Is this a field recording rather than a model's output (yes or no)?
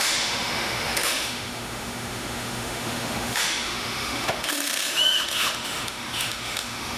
no